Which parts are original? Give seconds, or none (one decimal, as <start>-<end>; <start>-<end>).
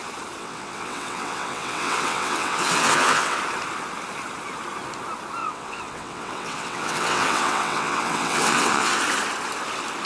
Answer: 0.0-0.4; 3.4-5.4; 9.0-10.1